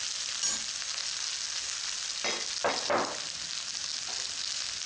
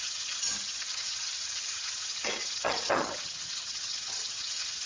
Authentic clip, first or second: first